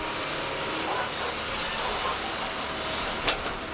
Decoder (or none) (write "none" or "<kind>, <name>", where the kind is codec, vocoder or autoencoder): none